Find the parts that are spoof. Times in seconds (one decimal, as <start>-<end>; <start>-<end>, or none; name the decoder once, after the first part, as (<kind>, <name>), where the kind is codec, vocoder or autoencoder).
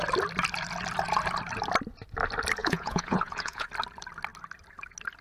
2.6-3.7 (vocoder, Vocos)